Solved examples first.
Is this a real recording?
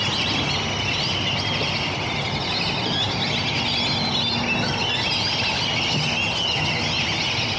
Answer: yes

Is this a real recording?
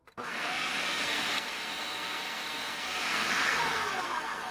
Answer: no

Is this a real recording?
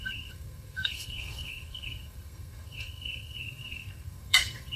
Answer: no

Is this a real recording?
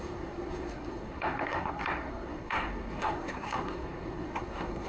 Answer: no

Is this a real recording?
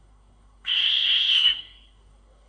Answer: no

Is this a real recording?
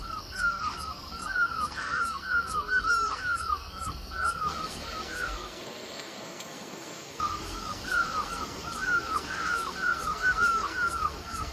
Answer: no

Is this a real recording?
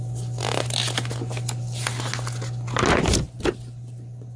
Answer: yes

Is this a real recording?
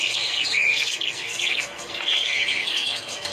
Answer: no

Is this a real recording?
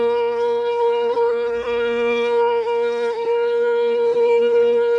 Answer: no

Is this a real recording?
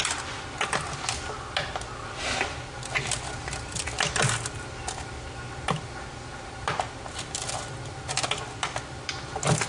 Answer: yes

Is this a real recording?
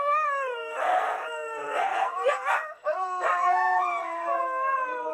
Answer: no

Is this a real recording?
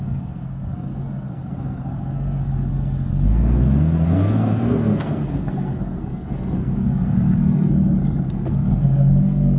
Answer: no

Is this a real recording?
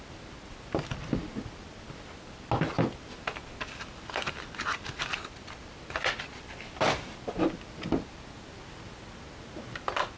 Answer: yes